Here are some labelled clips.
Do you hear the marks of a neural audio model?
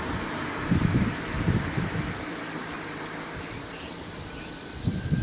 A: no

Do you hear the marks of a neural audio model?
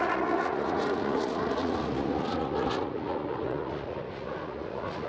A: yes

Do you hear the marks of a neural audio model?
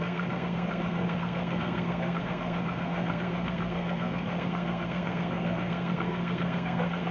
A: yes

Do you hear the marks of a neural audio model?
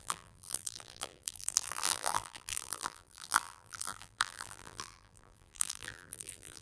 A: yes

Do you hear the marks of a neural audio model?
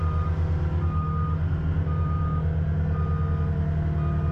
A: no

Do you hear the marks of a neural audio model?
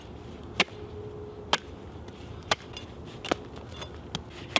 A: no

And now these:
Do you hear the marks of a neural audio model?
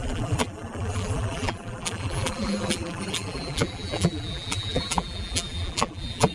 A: yes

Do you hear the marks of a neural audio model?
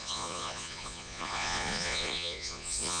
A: yes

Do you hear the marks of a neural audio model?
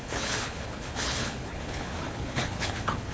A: yes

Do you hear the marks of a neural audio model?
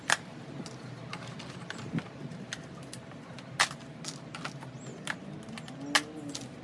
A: no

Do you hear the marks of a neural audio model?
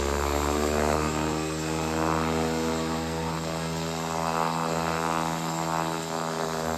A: yes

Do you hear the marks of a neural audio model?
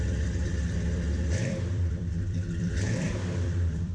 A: yes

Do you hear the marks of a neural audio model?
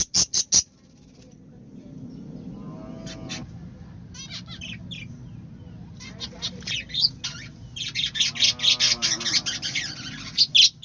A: no